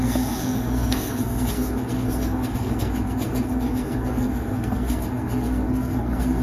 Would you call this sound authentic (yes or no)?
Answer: no